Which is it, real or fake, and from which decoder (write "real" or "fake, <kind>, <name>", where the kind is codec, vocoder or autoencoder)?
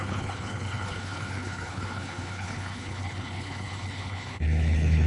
fake, codec, HILCodec